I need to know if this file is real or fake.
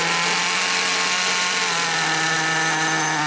real